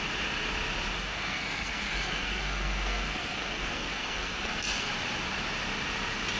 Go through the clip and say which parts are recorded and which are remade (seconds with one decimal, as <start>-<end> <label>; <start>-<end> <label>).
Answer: 0.0-1.1 recorded; 1.1-4.9 remade; 4.9-6.4 recorded